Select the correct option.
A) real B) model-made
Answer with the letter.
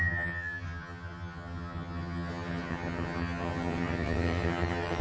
B